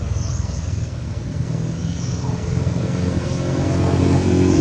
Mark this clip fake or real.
fake